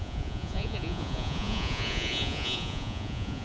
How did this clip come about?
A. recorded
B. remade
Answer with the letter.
B